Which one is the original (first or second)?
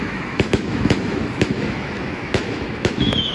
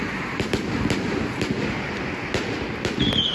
second